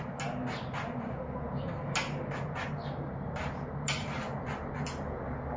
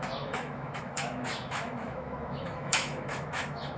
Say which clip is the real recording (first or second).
first